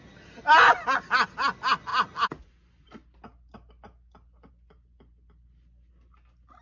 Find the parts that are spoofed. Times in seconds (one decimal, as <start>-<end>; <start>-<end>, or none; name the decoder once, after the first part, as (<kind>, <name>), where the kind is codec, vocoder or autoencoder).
none